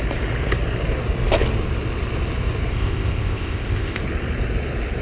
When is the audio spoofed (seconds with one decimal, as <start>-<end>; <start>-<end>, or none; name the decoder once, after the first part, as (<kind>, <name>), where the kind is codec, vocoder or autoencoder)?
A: 2.7-4.0 (codec, ZipCodec)